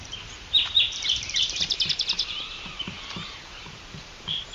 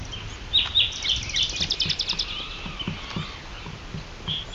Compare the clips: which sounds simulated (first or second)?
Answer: first